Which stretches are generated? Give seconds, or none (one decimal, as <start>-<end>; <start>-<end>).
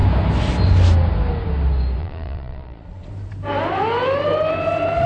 2.0-3.1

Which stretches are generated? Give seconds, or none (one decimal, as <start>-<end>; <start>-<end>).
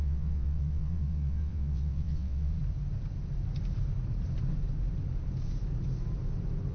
0.0-2.5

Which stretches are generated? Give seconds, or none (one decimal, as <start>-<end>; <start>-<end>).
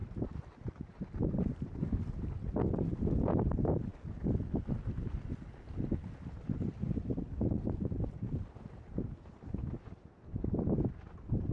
0.0-2.0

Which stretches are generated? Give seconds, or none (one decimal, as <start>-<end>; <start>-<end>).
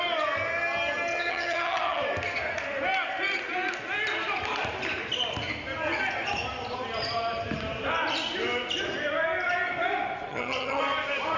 1.1-2.0; 10.3-10.8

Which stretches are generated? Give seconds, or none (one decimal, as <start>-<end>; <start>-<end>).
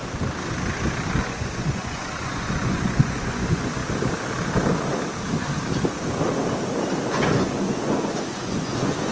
1.2-3.8; 7.1-9.1